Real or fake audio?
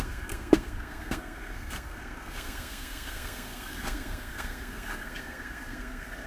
fake